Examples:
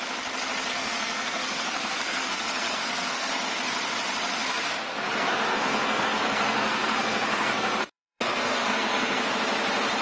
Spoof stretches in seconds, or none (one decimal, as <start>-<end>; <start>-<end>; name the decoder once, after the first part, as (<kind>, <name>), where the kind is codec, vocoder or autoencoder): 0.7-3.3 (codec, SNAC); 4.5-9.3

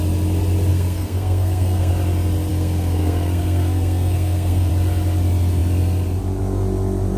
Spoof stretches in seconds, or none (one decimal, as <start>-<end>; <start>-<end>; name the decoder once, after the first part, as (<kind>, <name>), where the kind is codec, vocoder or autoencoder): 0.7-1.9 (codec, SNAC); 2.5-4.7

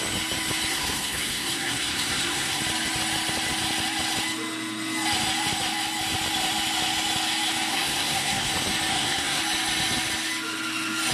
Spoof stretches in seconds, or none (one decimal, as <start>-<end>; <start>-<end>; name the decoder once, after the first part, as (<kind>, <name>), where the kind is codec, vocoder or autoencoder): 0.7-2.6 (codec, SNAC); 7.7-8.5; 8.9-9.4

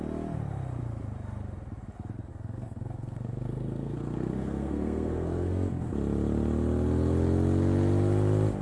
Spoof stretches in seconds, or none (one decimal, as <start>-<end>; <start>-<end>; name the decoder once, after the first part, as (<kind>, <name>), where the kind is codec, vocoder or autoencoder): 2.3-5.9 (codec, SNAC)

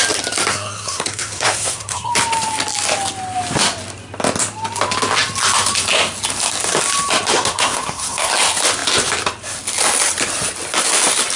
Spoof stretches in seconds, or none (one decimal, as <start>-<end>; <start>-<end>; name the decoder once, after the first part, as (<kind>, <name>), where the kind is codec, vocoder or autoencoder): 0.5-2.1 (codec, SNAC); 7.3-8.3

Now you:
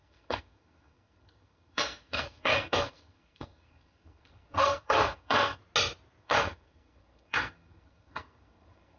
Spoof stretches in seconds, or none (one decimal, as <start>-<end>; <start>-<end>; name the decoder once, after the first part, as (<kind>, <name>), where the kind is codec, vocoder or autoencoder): 0.0-5.6 (codec, SNAC); 6.2-9.0